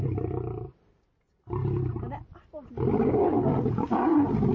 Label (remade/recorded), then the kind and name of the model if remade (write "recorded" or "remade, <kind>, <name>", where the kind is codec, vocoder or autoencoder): recorded